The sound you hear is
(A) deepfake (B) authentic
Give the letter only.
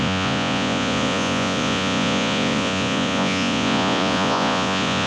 A